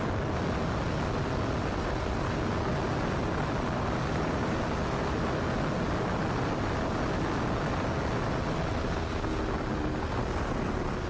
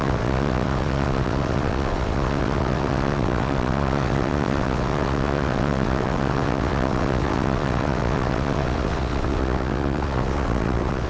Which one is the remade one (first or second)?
second